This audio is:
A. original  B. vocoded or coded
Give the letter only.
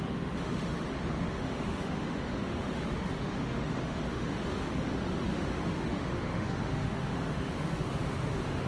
B